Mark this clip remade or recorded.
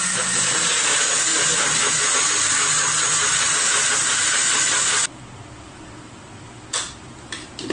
recorded